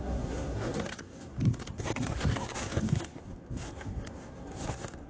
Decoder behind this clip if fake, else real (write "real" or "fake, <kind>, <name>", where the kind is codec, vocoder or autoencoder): fake, codec, SNAC